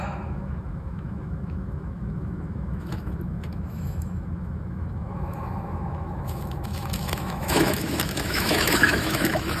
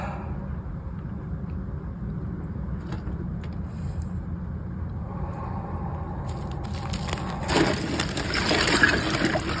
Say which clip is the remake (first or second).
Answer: first